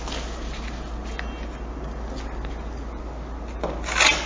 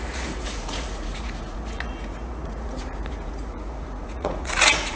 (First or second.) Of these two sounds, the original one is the first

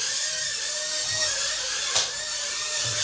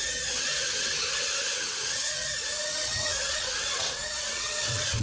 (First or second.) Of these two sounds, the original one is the first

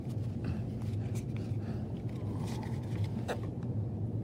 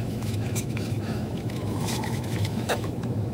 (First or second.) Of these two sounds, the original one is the first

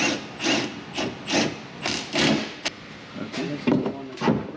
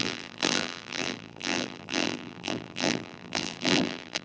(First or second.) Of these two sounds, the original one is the first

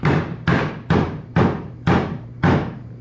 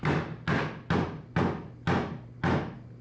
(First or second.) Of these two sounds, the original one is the second